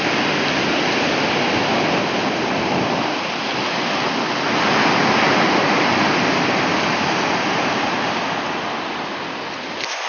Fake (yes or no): no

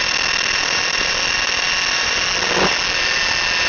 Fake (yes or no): no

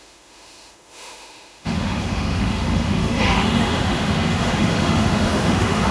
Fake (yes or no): yes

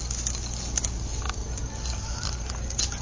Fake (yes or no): no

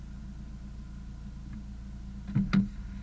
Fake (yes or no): no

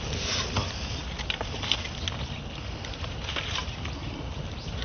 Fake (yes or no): no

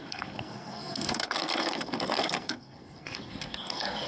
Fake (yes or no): yes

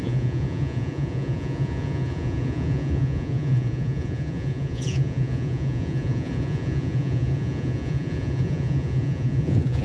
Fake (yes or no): yes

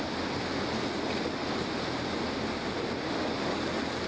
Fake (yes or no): no